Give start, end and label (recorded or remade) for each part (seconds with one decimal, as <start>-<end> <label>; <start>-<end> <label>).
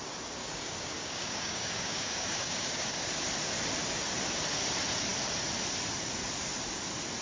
0.0-0.4 recorded; 0.4-3.1 remade; 3.1-7.2 recorded